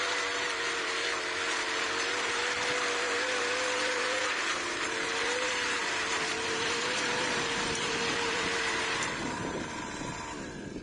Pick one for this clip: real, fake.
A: fake